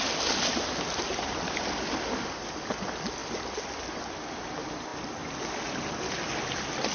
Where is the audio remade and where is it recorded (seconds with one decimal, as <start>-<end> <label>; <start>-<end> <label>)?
0.0-6.9 recorded